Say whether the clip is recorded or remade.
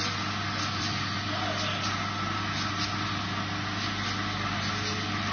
recorded